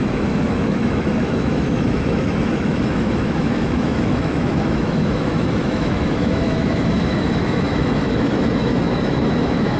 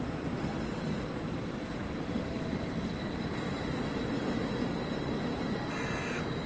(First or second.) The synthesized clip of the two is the first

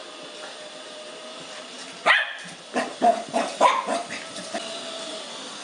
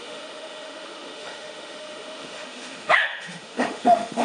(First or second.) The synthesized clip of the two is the second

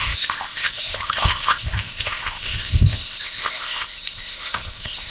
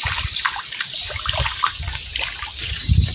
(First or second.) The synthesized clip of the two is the first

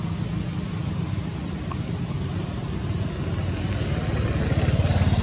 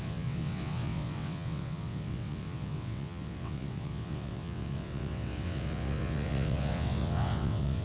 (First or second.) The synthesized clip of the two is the second